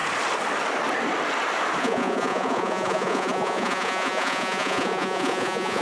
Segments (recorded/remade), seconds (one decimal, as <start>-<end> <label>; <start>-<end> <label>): 0.0-1.8 recorded; 1.8-5.8 remade